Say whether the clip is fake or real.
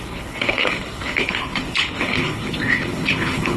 fake